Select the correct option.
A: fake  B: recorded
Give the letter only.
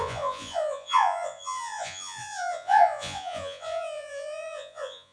A